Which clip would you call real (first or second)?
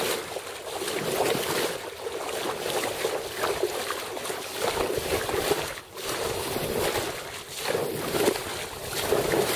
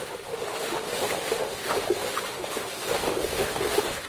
first